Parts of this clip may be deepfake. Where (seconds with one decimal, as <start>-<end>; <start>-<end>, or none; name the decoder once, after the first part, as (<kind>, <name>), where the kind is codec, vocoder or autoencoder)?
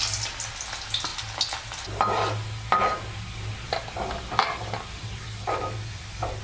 none